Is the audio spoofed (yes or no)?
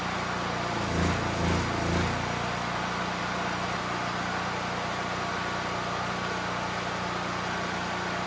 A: no